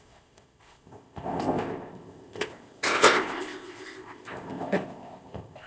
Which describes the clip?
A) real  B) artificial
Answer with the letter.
B